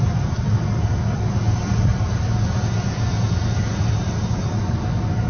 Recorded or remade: recorded